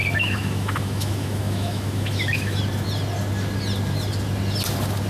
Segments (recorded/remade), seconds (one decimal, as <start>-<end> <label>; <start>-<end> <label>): 0.0-2.6 remade; 2.6-5.1 recorded